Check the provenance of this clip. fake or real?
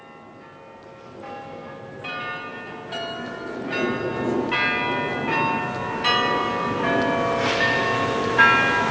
real